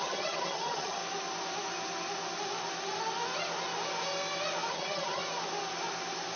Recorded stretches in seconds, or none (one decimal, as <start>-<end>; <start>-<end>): 1.0-4.7; 5.2-6.4